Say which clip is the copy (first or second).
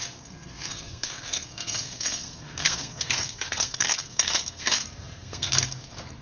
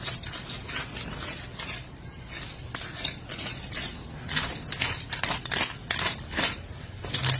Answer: first